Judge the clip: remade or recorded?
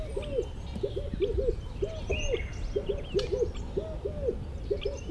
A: recorded